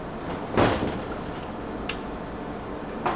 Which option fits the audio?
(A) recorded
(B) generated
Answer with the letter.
A